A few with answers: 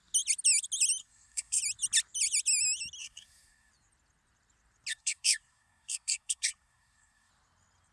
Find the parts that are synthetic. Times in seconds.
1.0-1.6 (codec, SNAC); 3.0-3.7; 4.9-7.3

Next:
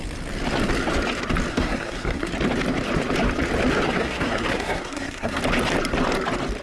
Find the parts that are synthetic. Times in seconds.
1.5-2.3 (codec, SNAC); 4.0-5.4

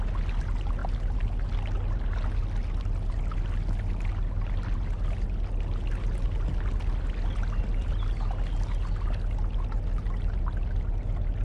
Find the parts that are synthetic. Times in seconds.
none

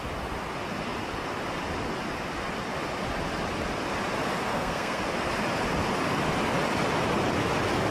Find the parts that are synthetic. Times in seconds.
4.5-5.0 (codec, SNAC)

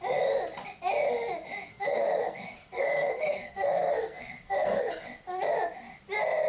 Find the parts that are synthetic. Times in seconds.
1.7-4.9 (codec, SNAC)

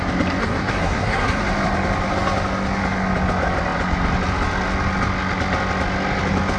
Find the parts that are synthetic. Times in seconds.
0.4-1.4 (codec, SNAC)